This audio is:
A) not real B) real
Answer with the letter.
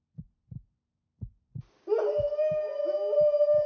B